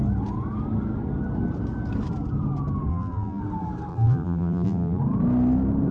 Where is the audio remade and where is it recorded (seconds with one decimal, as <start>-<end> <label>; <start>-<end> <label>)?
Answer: 0.0-2.9 recorded; 2.9-3.4 remade; 3.4-3.9 recorded; 3.9-5.0 remade; 5.0-5.9 recorded